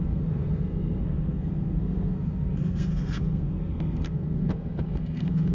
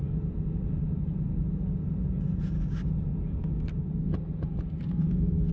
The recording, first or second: second